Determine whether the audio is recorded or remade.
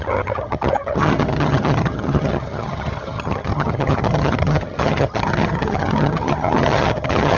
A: remade